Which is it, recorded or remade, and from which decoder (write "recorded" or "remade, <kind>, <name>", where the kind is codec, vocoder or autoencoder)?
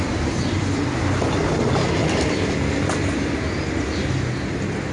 recorded